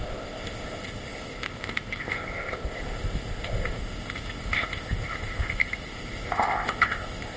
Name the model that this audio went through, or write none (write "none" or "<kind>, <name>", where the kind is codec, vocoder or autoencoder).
codec, ZipCodec